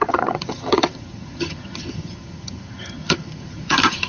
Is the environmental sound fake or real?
fake